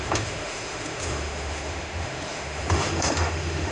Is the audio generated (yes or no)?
yes